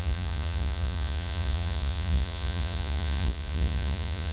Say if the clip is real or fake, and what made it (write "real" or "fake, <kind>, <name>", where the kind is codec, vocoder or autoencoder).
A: fake, vocoder, Vocos